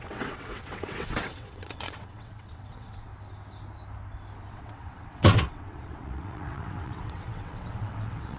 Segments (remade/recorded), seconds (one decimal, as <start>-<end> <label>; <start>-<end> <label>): 0.0-3.1 remade; 3.1-4.5 recorded; 4.5-8.4 remade